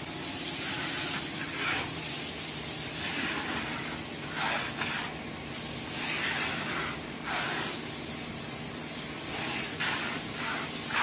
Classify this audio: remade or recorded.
recorded